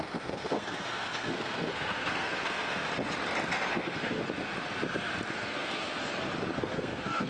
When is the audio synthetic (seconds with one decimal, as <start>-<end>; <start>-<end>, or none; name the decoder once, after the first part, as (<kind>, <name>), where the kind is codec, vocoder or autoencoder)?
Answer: 0.0-2.9 (codec, SNAC); 3.7-4.2; 5.3-5.9; 6.6-7.3